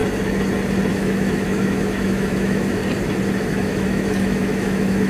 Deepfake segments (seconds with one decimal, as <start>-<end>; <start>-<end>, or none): 0.9-2.8; 3.4-5.1